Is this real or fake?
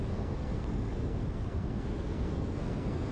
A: fake